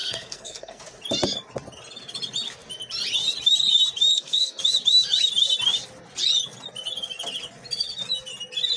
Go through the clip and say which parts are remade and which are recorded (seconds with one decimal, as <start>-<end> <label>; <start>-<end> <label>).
0.0-0.8 remade; 0.8-4.1 recorded; 4.1-4.6 remade; 4.6-8.8 recorded